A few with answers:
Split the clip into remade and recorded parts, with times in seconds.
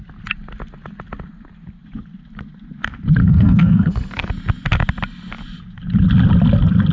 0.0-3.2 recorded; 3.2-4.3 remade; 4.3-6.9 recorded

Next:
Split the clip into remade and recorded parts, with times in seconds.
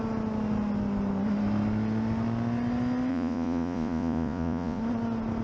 0.0-3.1 recorded; 3.1-4.8 remade; 4.8-5.4 recorded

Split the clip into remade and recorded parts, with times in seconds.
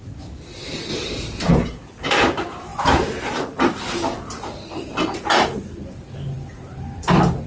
0.0-0.9 recorded; 0.9-1.5 remade; 1.5-2.7 recorded; 2.7-7.5 remade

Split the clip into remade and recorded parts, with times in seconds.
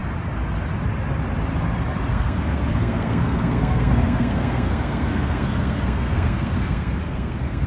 0.0-2.1 recorded; 2.1-7.7 remade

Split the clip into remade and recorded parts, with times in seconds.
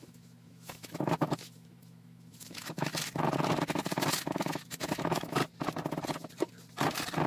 0.0-2.9 remade; 2.9-4.1 recorded; 4.1-5.4 remade; 5.4-7.3 recorded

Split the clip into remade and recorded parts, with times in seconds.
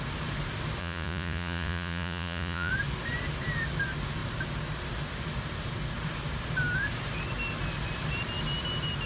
0.0-0.8 recorded; 0.8-2.7 remade; 2.7-9.1 recorded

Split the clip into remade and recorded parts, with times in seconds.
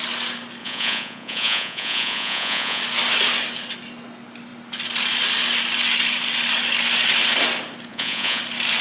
0.0-0.6 recorded; 0.6-2.8 remade; 2.8-7.9 recorded; 7.9-8.4 remade; 8.4-8.8 recorded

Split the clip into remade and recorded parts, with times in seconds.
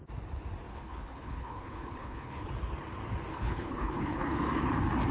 0.0-0.7 recorded; 0.7-2.5 remade; 2.5-3.3 recorded; 3.3-4.4 remade; 4.4-5.1 recorded